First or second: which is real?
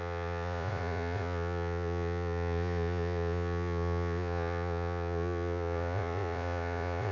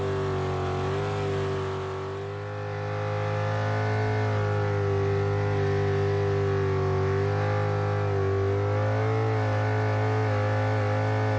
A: second